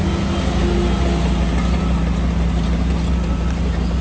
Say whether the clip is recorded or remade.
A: recorded